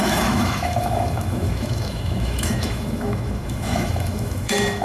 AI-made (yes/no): yes